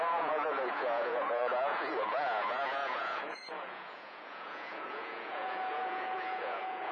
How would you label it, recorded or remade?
remade